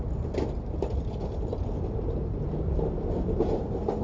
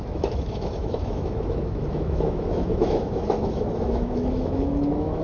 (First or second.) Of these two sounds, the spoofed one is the second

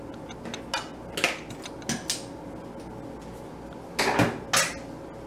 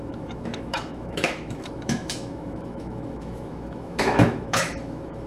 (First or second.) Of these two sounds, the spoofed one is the second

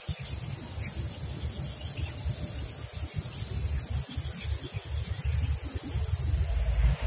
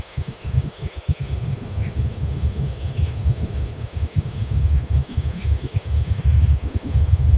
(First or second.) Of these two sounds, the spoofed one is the second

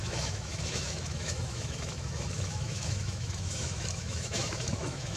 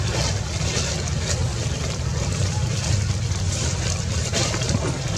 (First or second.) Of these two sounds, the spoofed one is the first